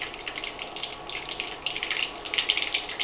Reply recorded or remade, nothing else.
recorded